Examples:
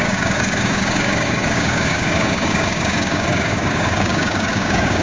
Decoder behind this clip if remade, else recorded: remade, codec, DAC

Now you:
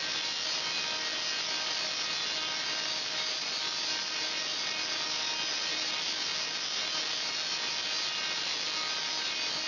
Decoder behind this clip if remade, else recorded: recorded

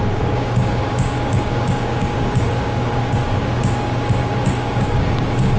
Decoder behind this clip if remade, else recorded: remade, codec, DAC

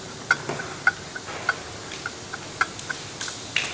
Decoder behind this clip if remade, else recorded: recorded